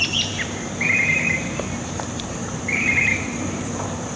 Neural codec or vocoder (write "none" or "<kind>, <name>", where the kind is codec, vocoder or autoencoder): vocoder, BigVGAN v2